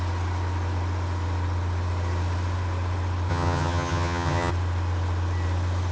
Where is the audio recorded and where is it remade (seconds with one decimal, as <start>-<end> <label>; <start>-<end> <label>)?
0.0-3.3 recorded; 3.3-4.5 remade; 4.5-5.9 recorded